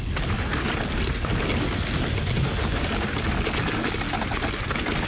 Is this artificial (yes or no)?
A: no